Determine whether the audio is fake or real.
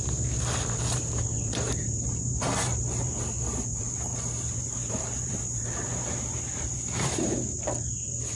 fake